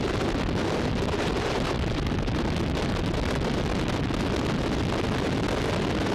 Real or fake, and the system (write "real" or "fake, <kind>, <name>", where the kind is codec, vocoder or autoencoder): real